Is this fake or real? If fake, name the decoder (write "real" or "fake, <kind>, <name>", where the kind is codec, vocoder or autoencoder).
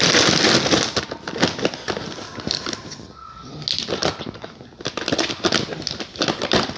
real